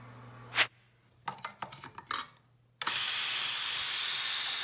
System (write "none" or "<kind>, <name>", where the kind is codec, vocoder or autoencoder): none